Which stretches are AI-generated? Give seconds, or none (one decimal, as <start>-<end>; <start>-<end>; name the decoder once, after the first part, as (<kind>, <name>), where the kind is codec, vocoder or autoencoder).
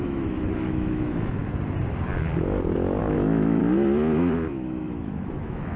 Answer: 0.0-1.4 (autoencoder, DAC-VAE); 3.0-3.6; 4.5-5.8